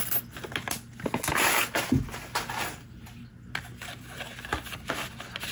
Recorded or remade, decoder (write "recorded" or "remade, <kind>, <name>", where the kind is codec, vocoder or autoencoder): recorded